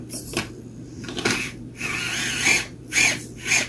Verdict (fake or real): real